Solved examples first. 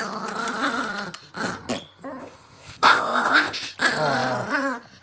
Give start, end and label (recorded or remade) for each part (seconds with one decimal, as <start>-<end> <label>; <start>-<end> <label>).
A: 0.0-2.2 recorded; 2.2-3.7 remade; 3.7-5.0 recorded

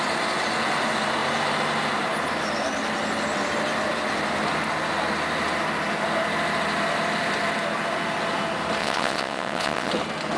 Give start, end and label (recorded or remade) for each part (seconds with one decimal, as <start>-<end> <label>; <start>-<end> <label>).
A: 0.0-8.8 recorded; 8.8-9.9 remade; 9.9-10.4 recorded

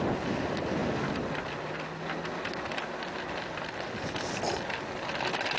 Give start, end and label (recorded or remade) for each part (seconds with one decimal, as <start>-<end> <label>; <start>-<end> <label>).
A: 0.0-5.6 recorded

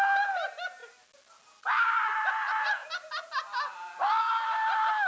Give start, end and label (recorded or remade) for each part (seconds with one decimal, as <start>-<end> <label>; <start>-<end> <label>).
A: 0.0-5.1 recorded